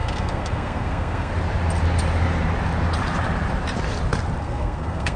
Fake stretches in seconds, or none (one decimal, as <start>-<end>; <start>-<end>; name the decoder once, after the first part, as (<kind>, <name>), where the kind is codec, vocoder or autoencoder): 0.0-1.3 (codec, SNAC); 4.4-5.2